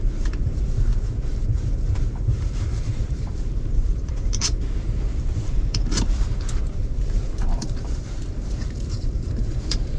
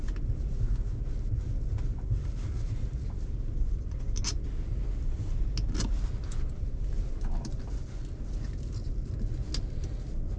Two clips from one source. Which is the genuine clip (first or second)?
second